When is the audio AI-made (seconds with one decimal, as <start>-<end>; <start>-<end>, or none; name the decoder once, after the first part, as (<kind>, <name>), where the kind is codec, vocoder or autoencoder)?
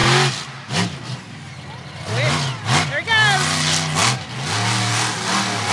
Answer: none